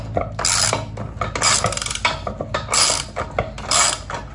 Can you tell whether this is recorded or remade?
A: recorded